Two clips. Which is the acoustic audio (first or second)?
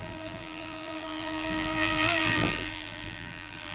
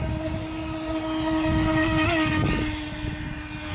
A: second